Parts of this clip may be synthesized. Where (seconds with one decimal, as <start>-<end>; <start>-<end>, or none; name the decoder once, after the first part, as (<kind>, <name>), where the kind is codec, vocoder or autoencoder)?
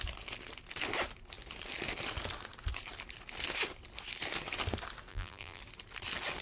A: 5.1-5.6 (vocoder, BigVGAN v2)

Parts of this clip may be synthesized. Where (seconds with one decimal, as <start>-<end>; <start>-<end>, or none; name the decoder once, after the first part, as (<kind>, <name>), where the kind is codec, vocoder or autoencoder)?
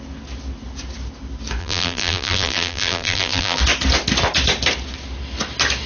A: 1.6-3.6 (vocoder, BigVGAN v2)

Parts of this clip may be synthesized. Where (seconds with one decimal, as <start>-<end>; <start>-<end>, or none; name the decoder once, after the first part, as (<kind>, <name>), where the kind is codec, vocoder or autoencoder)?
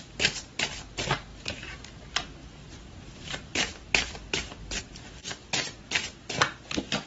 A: 2.4-4.8 (vocoder, BigVGAN v2)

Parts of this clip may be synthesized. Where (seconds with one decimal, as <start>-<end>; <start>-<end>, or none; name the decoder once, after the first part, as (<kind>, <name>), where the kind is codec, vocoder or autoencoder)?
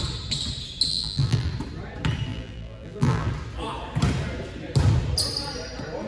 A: 0.9-1.5 (vocoder, BigVGAN v2); 2.3-3.3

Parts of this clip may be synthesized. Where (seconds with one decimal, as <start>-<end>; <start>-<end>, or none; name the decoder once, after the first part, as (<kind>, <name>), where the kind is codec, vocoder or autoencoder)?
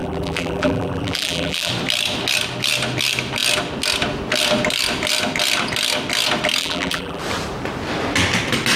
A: 0.0-1.7 (vocoder, BigVGAN v2); 6.6-7.2